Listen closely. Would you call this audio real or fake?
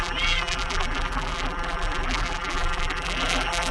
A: fake